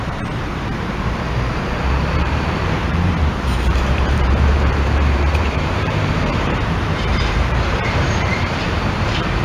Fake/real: fake